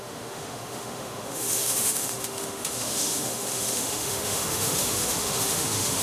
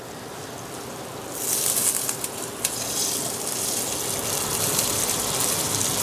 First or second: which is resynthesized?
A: first